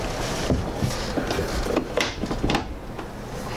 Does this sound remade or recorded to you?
recorded